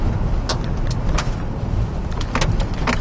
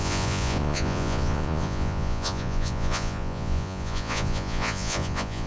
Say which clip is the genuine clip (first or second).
first